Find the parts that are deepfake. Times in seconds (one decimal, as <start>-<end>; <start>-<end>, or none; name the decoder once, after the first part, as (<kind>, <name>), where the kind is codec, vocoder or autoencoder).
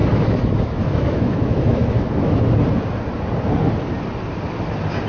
0.0-2.4 (autoencoder, DAC-VAE)